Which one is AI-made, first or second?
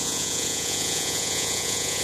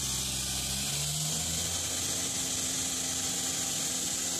first